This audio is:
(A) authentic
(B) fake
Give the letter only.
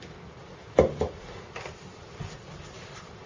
A